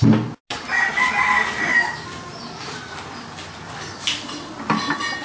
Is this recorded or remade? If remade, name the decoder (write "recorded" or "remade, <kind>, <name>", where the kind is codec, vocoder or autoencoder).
recorded